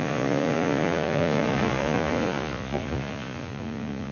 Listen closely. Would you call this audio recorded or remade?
remade